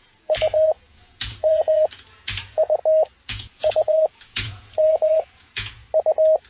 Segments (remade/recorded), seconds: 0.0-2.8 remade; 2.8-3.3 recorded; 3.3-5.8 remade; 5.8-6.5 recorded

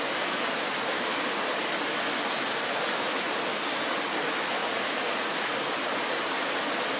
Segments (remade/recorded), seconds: 0.0-4.6 recorded; 4.6-5.5 remade; 5.5-7.0 recorded

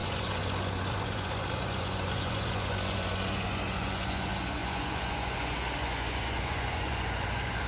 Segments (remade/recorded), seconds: 0.0-7.7 remade